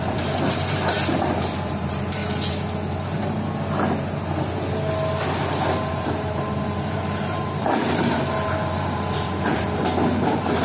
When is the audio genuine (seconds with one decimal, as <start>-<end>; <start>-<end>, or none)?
2.2-5.9